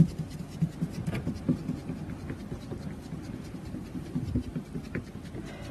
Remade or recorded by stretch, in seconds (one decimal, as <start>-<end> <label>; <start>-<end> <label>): 0.0-5.7 recorded